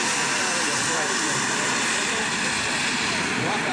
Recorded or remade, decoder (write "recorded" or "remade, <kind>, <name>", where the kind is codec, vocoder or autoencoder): remade, vocoder, BigVGAN v2